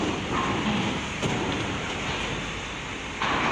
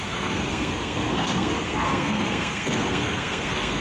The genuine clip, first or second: first